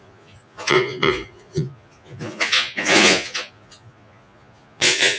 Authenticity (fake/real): fake